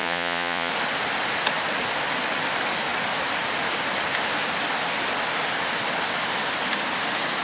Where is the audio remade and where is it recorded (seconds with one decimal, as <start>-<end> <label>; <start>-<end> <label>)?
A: 0.0-0.7 remade; 0.7-7.4 recorded